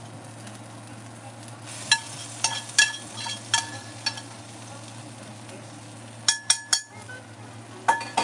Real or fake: real